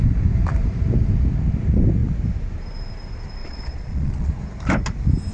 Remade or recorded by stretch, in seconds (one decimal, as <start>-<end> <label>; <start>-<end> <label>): 0.0-3.4 recorded; 3.4-4.3 remade; 4.3-5.3 recorded